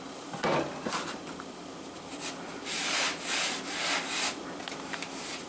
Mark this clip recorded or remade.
recorded